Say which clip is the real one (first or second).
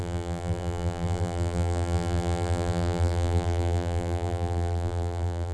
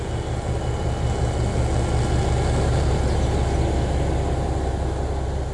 second